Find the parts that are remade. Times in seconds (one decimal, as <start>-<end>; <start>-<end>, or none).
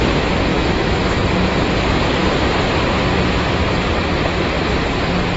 0.5-1.2